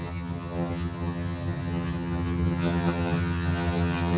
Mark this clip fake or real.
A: fake